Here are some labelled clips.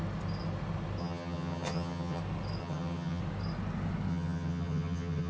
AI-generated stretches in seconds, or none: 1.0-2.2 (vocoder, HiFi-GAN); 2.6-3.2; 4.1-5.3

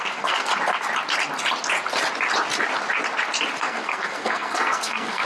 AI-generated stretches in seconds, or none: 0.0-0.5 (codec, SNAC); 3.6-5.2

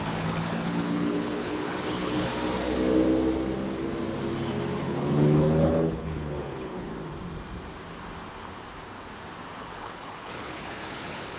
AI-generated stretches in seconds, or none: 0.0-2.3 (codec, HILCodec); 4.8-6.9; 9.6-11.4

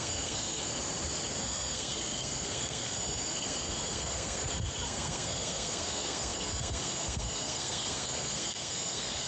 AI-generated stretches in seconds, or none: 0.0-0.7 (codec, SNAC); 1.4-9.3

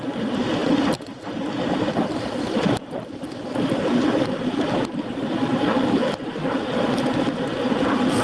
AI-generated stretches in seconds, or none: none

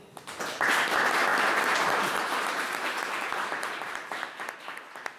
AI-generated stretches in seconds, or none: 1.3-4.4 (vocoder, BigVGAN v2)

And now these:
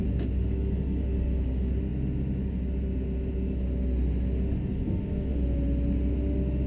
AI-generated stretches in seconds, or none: none